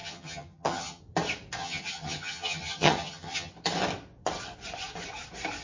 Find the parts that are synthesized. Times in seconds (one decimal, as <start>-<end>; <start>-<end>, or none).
0.0-1.0; 1.6-3.5